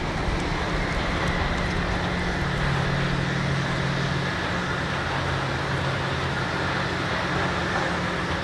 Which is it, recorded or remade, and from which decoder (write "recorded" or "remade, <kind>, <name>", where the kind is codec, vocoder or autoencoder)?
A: recorded